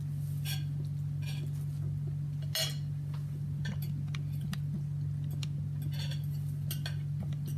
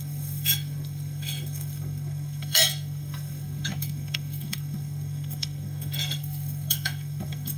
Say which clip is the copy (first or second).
second